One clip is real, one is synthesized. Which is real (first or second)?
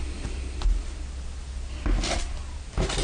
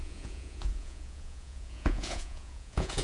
first